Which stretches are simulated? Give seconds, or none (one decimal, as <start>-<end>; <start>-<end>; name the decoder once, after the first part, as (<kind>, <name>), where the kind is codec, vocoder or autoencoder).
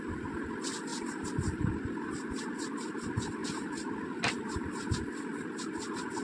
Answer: 0.9-1.7 (vocoder, BigVGAN v2); 3.4-4.7